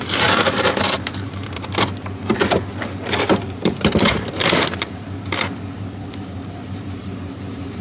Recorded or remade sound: remade